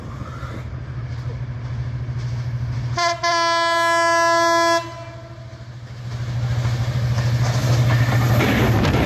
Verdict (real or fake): real